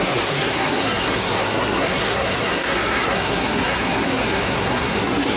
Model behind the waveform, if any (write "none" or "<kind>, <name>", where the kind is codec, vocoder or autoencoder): codec, SNAC